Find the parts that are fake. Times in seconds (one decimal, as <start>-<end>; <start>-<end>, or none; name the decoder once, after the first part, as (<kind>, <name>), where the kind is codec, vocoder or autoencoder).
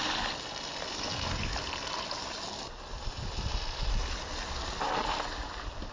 none